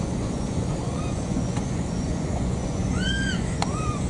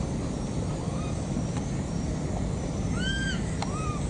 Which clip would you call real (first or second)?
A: second